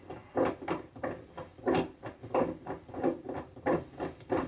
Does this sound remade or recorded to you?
recorded